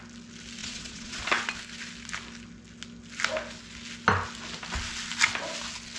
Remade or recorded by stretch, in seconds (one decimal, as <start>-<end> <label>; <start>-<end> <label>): 0.0-0.6 recorded; 0.6-1.2 remade; 1.2-6.0 recorded